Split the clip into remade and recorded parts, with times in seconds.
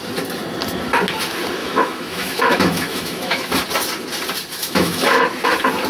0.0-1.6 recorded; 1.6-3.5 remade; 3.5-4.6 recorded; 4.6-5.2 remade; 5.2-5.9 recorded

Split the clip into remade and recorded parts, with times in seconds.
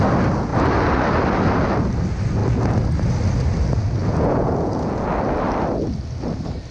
0.0-4.0 recorded; 4.0-5.1 remade; 5.1-6.7 recorded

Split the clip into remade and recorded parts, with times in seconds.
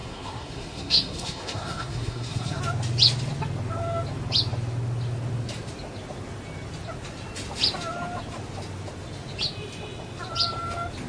0.0-2.6 remade; 2.6-11.1 recorded